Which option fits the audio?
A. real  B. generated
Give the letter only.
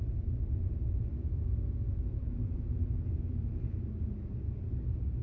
A